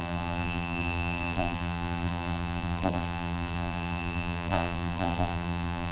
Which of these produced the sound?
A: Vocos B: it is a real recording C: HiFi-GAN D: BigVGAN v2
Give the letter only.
D